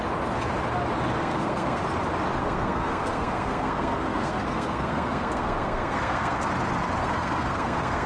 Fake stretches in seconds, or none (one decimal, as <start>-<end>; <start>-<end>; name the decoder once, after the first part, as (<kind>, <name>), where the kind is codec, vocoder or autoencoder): 1.2-1.8 (codec, SNAC); 2.4-6.4; 7.0-8.1

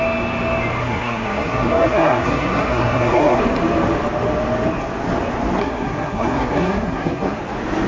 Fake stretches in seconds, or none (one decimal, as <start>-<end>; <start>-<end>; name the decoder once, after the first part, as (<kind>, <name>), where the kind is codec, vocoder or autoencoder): 0.8-3.4 (codec, SNAC); 5.6-7.4